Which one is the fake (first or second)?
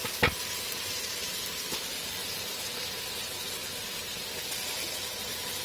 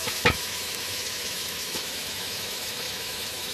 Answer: second